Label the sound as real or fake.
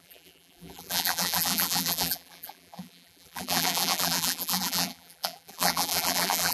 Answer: fake